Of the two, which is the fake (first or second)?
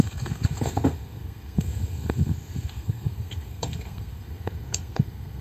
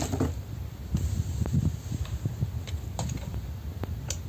first